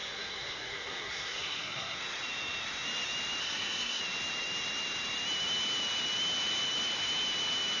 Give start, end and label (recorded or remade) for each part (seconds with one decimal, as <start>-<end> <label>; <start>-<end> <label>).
0.0-2.0 remade; 2.0-3.4 recorded; 3.4-4.0 remade; 4.0-7.8 recorded